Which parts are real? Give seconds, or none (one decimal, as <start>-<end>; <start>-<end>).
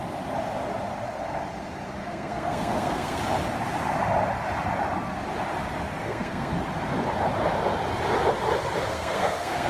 0.0-2.0; 3.2-6.0; 6.5-8.9